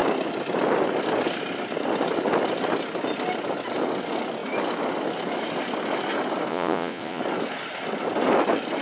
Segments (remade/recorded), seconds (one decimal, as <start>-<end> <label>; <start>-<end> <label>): 0.0-6.5 recorded; 6.5-7.2 remade; 7.2-8.8 recorded